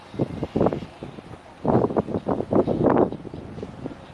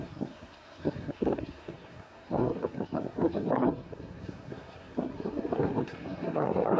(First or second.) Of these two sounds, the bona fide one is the first